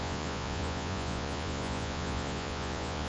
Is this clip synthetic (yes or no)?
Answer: yes